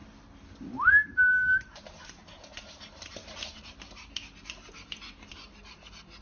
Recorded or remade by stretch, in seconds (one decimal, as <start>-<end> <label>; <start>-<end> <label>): 0.0-1.6 recorded; 1.6-2.2 remade; 2.2-2.9 recorded; 2.9-6.2 remade